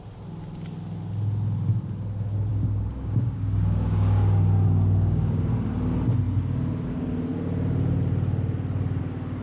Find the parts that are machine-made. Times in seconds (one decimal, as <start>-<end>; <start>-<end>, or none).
2.5-5.4